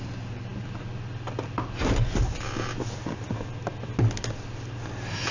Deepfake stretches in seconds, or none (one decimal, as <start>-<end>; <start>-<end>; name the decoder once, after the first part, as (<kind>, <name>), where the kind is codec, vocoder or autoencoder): none